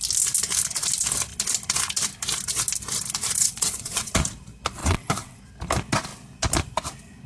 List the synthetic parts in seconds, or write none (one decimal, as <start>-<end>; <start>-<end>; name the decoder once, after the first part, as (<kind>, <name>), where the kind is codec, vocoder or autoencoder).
3.4-4.1 (vocoder, WaveNeXt); 4.8-5.4